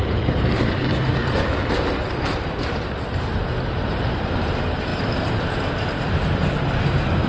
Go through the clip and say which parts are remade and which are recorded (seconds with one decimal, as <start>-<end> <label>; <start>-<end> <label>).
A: 0.0-4.9 remade; 4.9-5.5 recorded; 5.5-7.3 remade

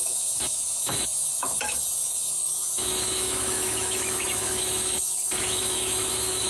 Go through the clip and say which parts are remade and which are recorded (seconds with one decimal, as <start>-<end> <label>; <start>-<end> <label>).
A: 0.0-6.5 remade

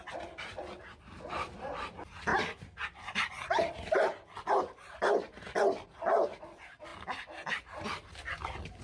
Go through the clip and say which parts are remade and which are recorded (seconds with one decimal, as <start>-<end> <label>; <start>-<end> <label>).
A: 0.0-8.8 recorded